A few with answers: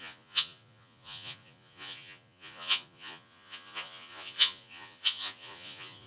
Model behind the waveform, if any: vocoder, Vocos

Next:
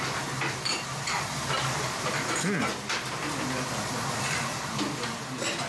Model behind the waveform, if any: none